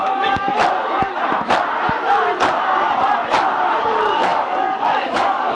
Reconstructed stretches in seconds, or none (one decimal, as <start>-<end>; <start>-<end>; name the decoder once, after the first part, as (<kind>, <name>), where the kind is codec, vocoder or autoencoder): 0.0-0.5 (codec, DAC); 3.8-5.5